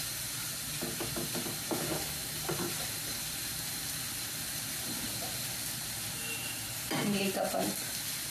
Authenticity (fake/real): real